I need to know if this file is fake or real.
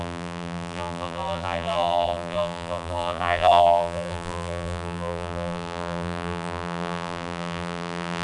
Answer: fake